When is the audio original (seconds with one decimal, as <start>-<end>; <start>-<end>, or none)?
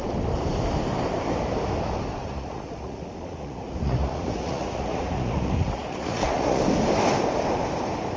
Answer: 0.0-2.2; 6.6-8.2